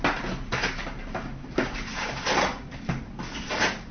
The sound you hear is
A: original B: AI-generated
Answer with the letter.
A